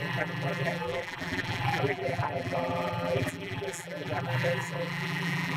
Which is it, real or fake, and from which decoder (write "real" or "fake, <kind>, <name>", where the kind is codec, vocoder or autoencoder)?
fake, vocoder, BigVGAN v2